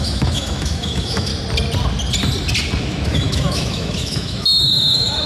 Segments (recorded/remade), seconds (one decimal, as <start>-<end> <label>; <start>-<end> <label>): 0.0-1.3 remade; 1.3-2.8 recorded; 2.8-5.3 remade